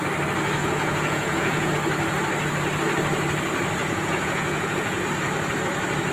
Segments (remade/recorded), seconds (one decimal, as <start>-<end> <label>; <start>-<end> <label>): 0.0-0.6 recorded; 0.6-1.7 remade; 1.7-3.8 recorded; 3.8-5.1 remade; 5.1-6.1 recorded